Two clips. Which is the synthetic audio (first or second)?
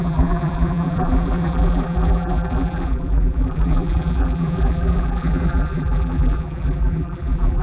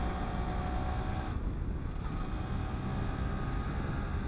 first